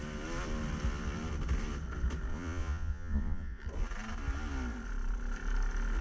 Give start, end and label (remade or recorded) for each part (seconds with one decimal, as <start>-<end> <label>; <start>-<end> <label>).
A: 0.0-2.3 recorded; 2.3-3.6 remade; 3.6-6.0 recorded